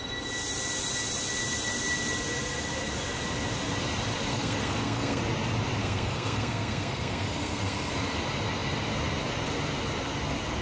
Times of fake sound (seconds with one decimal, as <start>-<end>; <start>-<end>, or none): 4.3-5.2; 5.8-7.9